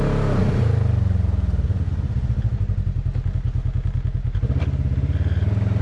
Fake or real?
real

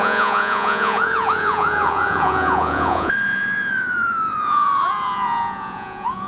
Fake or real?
fake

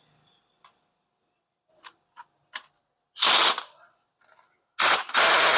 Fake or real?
real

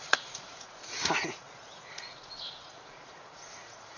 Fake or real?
fake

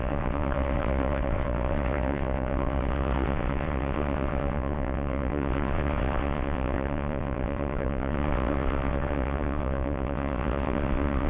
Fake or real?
fake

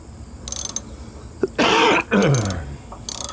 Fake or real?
real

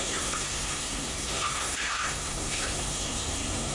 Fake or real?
fake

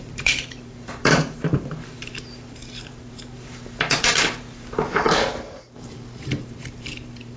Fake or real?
fake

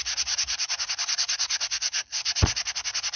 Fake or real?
real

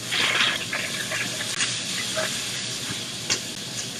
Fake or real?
real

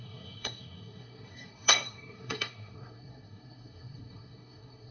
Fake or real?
fake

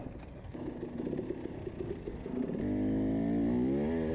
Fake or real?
real